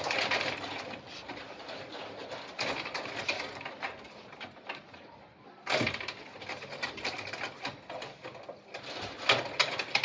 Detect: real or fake real